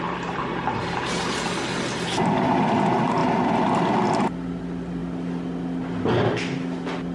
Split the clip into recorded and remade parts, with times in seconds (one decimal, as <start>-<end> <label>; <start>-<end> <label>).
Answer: 0.0-7.1 recorded